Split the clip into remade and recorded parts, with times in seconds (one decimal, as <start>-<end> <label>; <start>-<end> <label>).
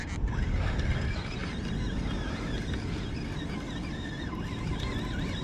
0.0-5.4 recorded